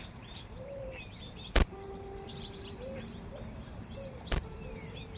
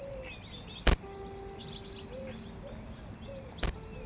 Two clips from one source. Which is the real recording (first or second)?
second